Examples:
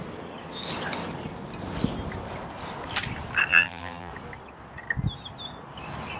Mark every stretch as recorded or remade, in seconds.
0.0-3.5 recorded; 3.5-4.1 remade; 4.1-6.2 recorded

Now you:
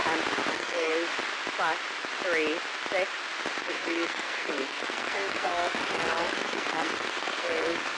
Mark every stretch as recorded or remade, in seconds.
0.0-0.5 recorded; 0.5-0.9 remade; 0.9-3.6 recorded; 3.6-8.0 remade

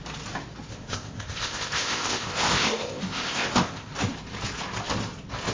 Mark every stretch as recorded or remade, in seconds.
0.0-0.7 recorded; 0.7-3.9 remade; 3.9-5.5 recorded

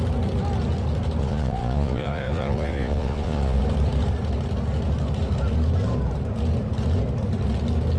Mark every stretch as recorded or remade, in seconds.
0.0-1.2 recorded; 1.2-3.6 remade; 3.6-8.0 recorded

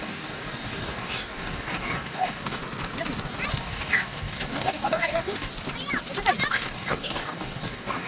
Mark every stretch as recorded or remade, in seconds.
0.0-2.6 remade; 2.6-3.5 recorded; 3.5-5.5 remade; 5.5-6.5 recorded; 6.5-8.1 remade

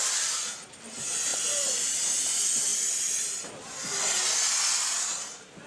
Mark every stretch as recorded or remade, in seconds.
0.0-5.7 recorded

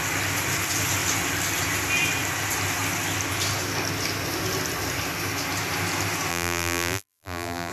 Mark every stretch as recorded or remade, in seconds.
0.0-6.3 recorded; 6.3-7.7 remade